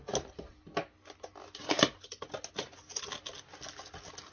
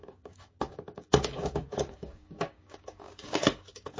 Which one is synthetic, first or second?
second